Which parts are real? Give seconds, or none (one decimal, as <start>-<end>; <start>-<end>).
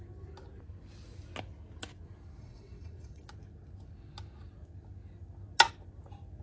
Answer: 0.0-2.4; 3.2-6.4